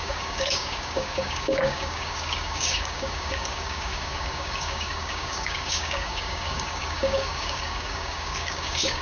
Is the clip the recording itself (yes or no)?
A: no